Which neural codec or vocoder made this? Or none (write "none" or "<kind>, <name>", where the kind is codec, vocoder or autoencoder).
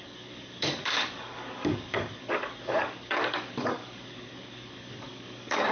codec, DAC